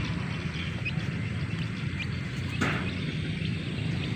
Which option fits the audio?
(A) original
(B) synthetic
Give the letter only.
A